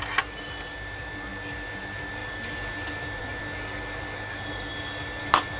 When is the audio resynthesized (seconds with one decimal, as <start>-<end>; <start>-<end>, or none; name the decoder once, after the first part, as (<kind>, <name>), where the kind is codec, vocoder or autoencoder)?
none